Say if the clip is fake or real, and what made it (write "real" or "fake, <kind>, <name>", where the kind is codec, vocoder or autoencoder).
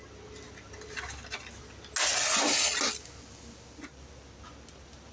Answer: real